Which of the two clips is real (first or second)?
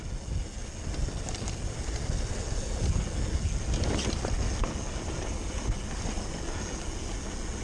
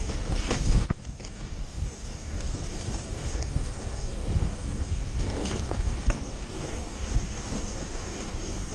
first